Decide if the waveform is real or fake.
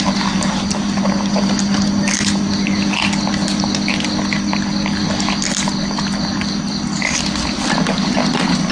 real